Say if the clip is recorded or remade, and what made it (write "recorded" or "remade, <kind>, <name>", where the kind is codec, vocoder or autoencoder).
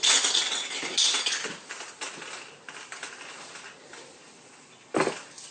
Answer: recorded